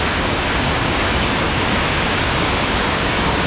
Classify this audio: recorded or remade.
remade